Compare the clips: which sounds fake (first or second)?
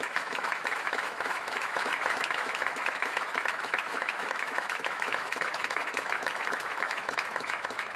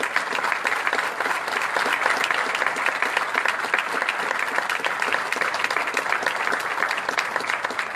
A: first